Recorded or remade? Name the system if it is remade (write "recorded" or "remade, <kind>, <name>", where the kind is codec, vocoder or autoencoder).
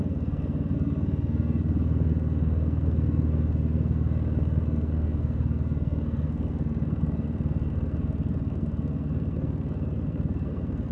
remade, codec, SNAC